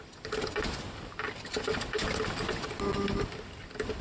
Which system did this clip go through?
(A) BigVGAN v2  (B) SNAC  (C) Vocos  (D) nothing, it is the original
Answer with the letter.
D